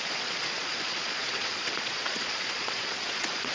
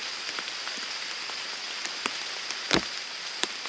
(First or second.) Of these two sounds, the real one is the second